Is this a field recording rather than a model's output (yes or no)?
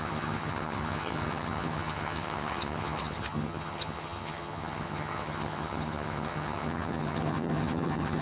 no